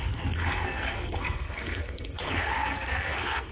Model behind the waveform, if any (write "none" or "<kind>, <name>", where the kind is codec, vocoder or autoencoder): codec, SNAC